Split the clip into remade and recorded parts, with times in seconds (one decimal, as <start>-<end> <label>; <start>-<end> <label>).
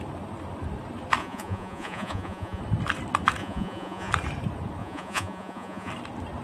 0.0-1.2 recorded; 1.2-2.6 remade; 2.6-3.4 recorded; 3.4-4.1 remade; 4.1-4.8 recorded; 4.8-5.9 remade; 5.9-6.4 recorded